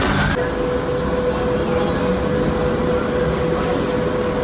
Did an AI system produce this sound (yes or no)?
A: no